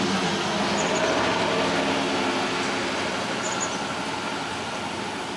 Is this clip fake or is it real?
real